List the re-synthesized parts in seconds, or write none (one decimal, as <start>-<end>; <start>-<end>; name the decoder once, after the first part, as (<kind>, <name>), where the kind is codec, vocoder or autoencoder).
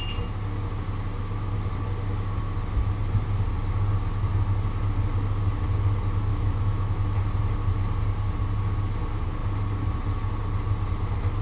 6.3-7.0 (autoencoder, DAC-VAE)